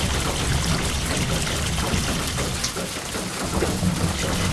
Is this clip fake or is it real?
real